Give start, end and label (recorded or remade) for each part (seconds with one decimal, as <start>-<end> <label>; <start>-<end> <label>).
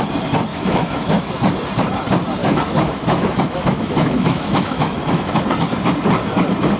0.0-0.5 recorded; 0.5-1.3 remade; 1.3-2.4 recorded; 2.4-5.4 remade; 5.4-6.8 recorded